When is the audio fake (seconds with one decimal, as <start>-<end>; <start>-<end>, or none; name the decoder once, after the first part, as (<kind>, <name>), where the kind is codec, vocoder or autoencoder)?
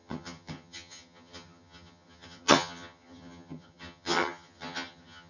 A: 0.0-5.3 (vocoder, HiFi-GAN)